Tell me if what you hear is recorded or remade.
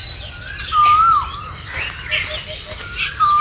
recorded